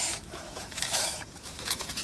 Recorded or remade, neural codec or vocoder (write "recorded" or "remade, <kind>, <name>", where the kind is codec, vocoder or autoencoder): remade, autoencoder, DAC-VAE